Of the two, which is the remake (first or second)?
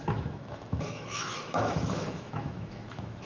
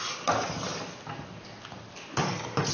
first